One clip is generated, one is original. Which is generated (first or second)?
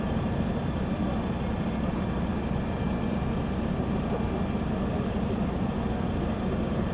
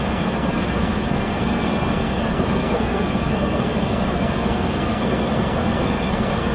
second